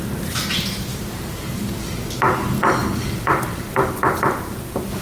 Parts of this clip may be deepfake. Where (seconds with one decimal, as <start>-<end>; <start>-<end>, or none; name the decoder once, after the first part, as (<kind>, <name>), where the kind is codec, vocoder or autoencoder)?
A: 0.9-1.9 (vocoder, BigVGAN v2); 2.8-5.0